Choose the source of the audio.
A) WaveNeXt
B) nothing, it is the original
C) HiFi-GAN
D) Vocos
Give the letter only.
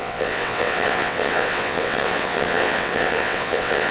A